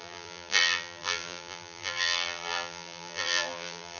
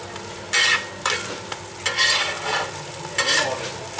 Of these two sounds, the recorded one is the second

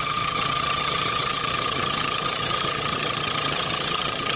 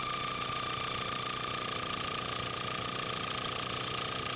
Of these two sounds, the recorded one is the second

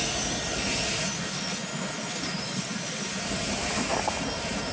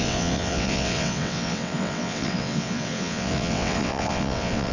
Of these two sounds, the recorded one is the first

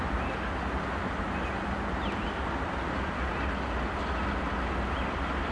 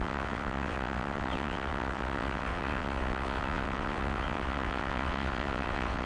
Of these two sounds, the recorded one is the first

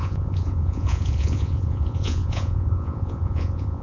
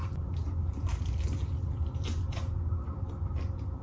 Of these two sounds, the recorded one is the second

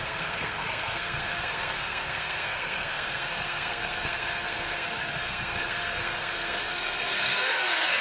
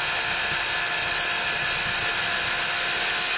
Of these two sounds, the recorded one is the second